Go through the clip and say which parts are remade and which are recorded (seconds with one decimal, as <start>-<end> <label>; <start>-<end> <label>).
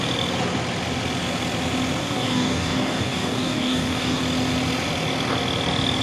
0.0-2.0 recorded; 2.0-4.2 remade; 4.2-6.0 recorded